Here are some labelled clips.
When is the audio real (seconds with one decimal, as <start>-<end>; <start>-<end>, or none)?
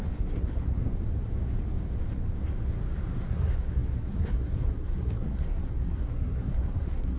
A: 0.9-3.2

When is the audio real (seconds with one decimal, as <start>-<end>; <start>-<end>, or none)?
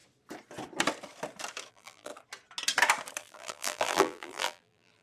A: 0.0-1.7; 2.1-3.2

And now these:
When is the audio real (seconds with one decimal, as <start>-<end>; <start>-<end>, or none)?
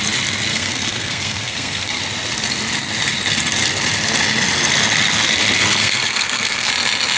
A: 0.0-0.5; 2.0-5.8; 6.7-7.2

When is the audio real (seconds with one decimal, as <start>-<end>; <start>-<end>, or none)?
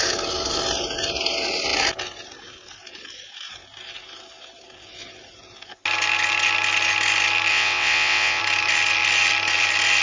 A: 0.0-7.5; 8.4-10.0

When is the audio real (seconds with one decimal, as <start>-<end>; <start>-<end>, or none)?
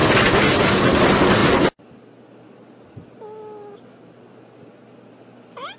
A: 0.0-5.8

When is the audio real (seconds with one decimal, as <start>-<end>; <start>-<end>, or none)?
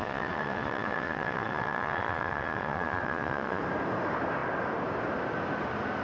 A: 3.6-6.0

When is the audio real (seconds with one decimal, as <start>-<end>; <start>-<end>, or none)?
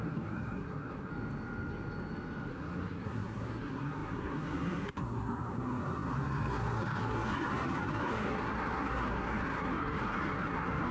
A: 1.1-2.5